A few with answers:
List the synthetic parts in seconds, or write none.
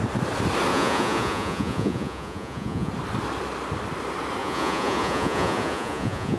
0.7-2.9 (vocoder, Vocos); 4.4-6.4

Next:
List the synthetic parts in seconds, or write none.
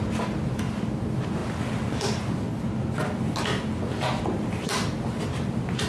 none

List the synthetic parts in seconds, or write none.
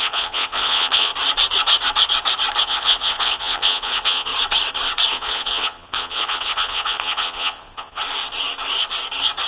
0.0-1.1 (vocoder, Vocos); 2.6-4.3; 5.1-8.0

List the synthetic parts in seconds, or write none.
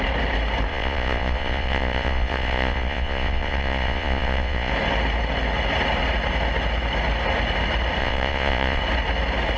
0.7-4.7 (vocoder, Vocos); 8.0-8.8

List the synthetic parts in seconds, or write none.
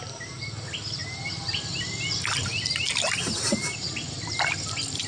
none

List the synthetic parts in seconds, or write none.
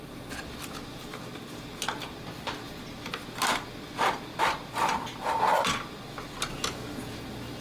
none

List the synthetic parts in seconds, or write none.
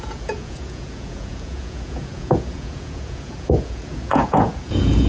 0.0-5.1 (vocoder, Vocos)